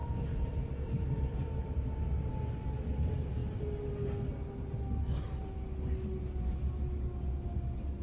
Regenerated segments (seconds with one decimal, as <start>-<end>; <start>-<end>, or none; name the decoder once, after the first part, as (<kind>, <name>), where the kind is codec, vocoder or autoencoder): 0.0-1.9 (vocoder, BigVGAN v2)